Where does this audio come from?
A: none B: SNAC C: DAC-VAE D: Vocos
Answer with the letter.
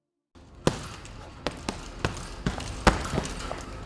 A